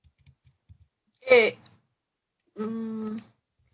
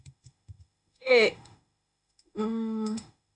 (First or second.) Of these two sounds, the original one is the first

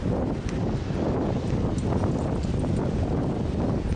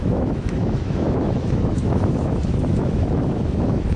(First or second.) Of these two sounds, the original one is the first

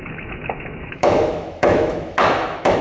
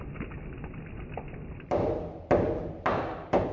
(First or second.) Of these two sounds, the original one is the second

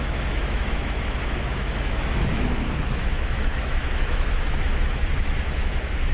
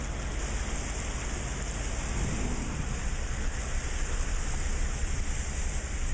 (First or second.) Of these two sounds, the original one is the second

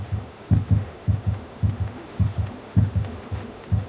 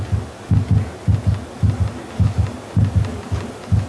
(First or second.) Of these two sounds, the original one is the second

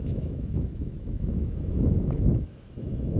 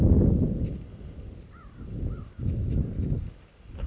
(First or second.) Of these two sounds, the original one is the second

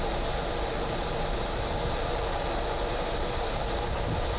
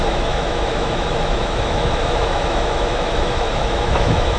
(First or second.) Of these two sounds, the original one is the first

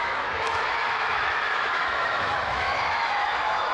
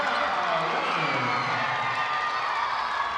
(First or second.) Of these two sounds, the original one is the second